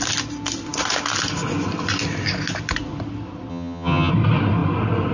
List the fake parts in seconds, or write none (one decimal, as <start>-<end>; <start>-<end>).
3.5-4.1